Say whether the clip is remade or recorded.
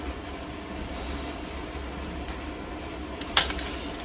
recorded